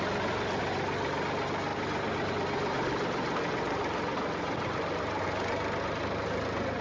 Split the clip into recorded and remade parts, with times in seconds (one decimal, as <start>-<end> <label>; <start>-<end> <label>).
0.0-6.8 recorded